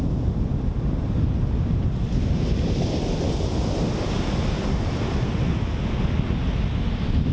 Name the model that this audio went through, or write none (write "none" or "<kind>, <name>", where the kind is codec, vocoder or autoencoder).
none